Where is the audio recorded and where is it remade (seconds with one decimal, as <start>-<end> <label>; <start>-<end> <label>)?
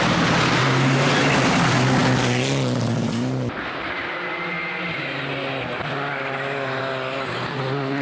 0.0-8.0 recorded